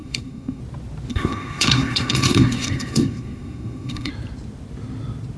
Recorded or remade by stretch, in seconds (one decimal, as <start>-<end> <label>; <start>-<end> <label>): 0.0-0.6 remade; 0.6-1.1 recorded; 1.1-4.1 remade; 4.1-5.4 recorded